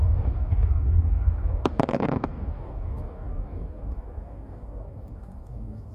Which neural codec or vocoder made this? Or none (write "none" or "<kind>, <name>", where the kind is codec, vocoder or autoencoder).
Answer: codec, DAC